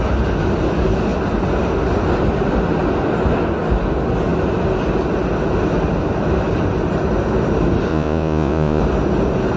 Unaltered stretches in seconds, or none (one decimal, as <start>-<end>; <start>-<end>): 0.0-7.9; 8.8-9.6